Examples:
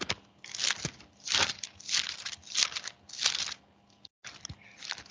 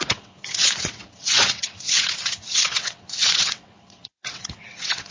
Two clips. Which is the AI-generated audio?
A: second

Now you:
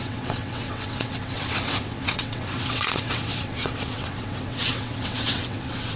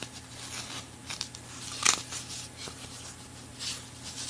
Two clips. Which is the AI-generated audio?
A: first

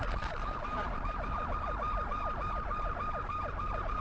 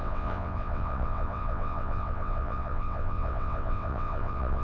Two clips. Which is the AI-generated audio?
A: second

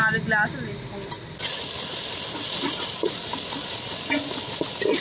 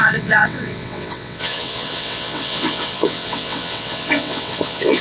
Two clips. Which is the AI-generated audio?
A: second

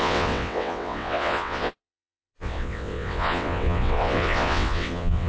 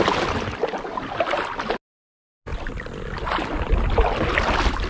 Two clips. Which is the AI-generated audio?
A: first